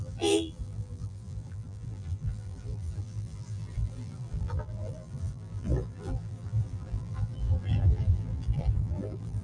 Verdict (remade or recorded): remade